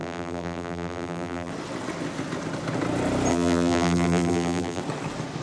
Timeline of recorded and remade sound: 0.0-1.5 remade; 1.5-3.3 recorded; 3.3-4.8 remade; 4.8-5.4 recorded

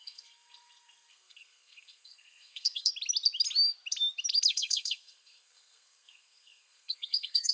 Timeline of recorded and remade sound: 0.0-2.9 remade; 2.9-4.5 recorded; 4.5-7.5 remade